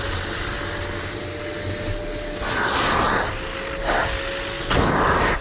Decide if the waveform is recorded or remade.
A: recorded